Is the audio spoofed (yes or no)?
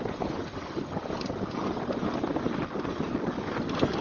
no